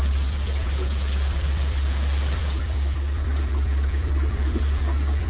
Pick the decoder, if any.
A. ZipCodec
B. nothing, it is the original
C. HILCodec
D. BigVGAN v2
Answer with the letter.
D